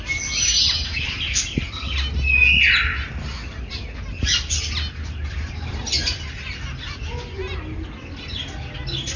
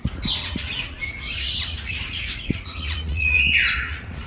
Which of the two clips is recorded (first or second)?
first